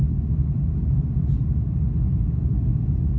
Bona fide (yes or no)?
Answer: yes